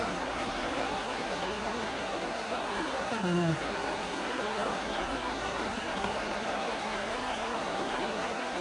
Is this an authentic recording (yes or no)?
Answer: no